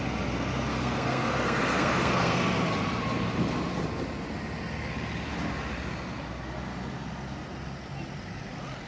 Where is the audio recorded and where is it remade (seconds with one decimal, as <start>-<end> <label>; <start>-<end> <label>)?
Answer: 0.0-0.7 recorded; 0.7-2.4 remade; 2.4-8.9 recorded